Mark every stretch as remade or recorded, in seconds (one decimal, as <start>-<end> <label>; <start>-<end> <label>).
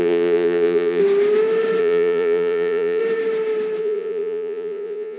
0.0-1.0 remade; 1.0-1.8 recorded; 1.8-3.0 remade; 3.0-3.8 recorded; 3.8-5.2 remade